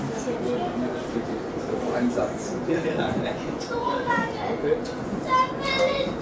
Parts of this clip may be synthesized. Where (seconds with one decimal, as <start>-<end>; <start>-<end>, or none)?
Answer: 2.2-5.2